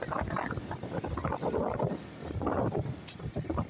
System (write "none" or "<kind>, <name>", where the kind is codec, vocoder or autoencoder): none